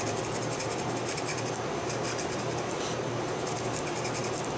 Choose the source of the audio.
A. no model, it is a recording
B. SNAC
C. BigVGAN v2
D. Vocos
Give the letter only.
A